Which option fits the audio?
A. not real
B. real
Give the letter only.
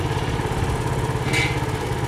B